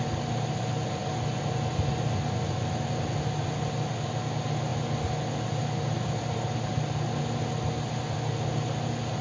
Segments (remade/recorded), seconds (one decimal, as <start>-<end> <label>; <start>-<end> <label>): 0.0-9.2 recorded

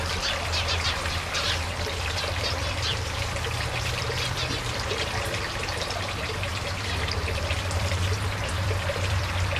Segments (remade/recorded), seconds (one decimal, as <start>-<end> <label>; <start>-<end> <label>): 0.0-9.6 remade